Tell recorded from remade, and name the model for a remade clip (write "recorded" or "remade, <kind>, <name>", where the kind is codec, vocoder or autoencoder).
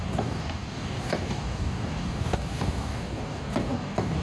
remade, codec, DAC